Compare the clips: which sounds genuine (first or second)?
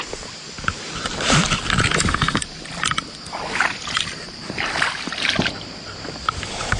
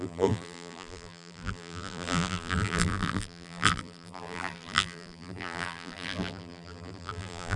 first